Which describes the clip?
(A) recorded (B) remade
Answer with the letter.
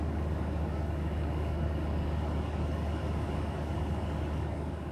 B